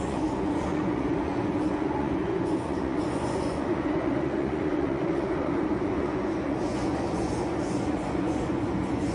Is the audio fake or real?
fake